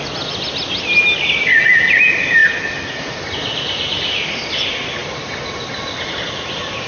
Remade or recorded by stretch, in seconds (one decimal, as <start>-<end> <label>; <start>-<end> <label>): 0.0-6.9 recorded